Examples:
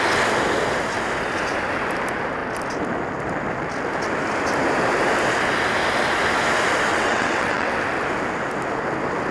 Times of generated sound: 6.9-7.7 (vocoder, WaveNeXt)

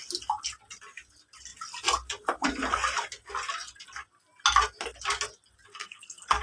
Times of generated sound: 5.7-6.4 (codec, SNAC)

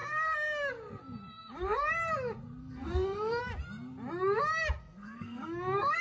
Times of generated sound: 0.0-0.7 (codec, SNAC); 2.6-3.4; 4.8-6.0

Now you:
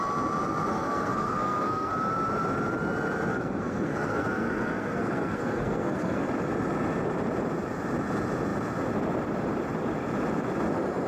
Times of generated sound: 0.7-1.9 (codec, SNAC); 3.3-6.2

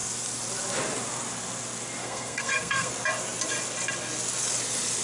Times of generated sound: 2.0-2.9 (codec, SNAC)